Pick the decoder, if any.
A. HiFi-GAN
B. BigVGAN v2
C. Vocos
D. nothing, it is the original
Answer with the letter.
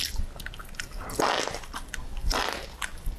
D